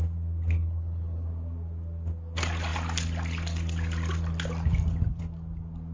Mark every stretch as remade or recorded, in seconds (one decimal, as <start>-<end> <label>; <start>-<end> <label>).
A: 0.0-0.6 recorded; 0.6-1.3 remade; 1.3-5.9 recorded